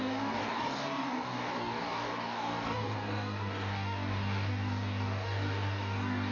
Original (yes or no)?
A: no